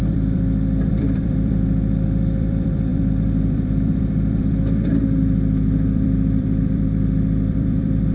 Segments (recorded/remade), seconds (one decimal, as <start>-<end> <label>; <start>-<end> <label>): 0.0-8.1 remade